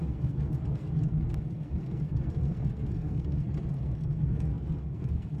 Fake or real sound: fake